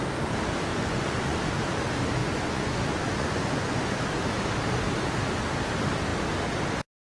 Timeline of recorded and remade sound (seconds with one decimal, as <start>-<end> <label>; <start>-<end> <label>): 0.0-0.7 recorded; 0.7-1.4 remade; 1.4-2.2 recorded; 2.2-4.0 remade; 4.0-7.1 recorded